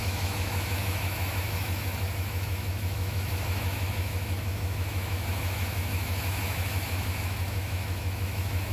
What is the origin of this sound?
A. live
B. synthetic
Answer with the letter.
B